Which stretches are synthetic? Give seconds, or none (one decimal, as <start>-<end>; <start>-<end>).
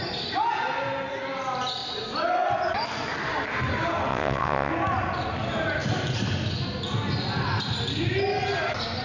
4.1-4.7